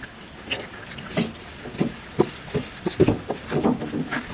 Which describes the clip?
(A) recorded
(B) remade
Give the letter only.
A